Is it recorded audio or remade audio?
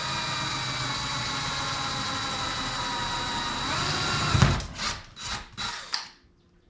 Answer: recorded